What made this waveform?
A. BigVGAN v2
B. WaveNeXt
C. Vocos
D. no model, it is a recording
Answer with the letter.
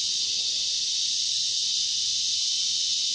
D